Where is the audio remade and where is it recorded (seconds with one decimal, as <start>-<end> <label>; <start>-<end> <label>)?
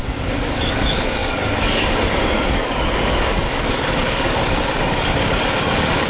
0.0-6.1 remade